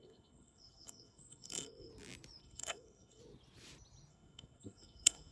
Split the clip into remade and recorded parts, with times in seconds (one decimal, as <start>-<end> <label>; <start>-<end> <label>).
0.0-1.9 remade; 1.9-2.4 recorded; 2.4-3.2 remade; 3.2-4.1 recorded; 4.1-5.3 remade